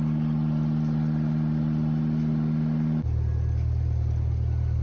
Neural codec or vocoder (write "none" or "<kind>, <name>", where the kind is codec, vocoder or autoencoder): none